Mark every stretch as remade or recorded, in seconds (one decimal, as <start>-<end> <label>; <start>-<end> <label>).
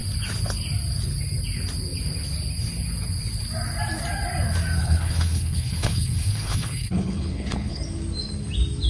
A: 0.0-4.8 recorded; 4.8-7.8 remade; 7.8-8.9 recorded